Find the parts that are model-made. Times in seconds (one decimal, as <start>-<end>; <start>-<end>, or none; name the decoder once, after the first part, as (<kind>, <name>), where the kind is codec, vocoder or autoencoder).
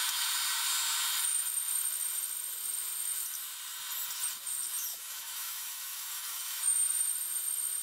4.9-6.7 (autoencoder, DAC-VAE)